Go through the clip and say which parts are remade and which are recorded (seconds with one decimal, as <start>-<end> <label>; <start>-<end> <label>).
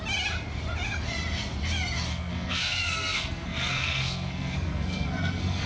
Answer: 0.0-2.1 recorded; 2.1-5.7 remade